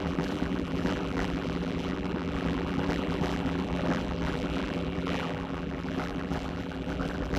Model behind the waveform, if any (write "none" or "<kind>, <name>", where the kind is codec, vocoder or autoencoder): vocoder, BigVGAN v2